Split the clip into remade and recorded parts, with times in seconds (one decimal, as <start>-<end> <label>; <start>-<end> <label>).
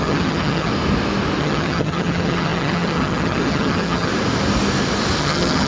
0.0-0.7 remade; 0.7-1.4 recorded; 1.4-4.1 remade; 4.1-5.2 recorded; 5.2-5.7 remade